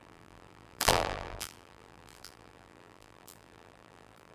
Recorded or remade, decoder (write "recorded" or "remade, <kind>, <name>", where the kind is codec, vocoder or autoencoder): remade, vocoder, BigVGAN v2